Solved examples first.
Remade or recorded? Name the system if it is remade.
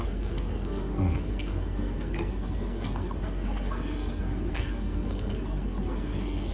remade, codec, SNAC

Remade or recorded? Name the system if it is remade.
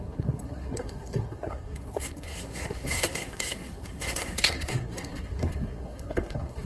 remade, codec, SNAC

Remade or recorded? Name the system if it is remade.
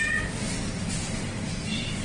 recorded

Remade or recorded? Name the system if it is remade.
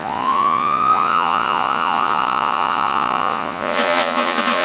remade, vocoder, Vocos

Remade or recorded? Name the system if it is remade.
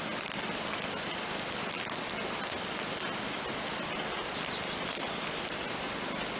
recorded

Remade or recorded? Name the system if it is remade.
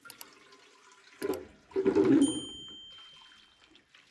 recorded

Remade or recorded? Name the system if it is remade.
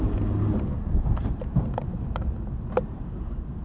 recorded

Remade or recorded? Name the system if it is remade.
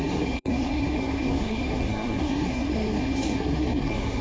remade, codec, SNAC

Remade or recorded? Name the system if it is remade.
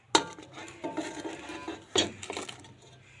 recorded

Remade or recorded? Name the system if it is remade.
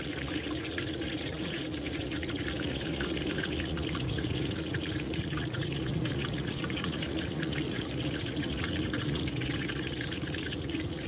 remade, vocoder, Vocos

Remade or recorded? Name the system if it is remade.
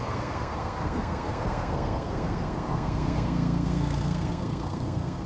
remade, codec, SNAC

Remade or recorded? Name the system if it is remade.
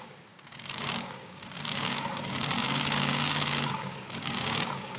remade, codec, DAC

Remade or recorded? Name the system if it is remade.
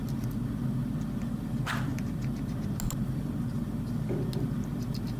recorded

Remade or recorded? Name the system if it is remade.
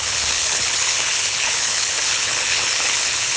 remade, codec, HILCodec